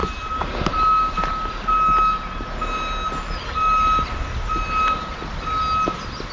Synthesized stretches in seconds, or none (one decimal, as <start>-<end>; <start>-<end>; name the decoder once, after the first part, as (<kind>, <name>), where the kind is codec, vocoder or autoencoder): none